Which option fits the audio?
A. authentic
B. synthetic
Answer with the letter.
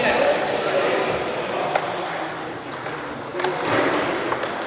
A